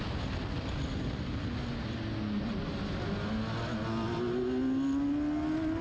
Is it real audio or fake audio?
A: real